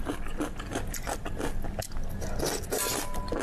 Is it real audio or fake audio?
real